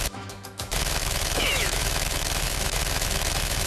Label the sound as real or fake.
fake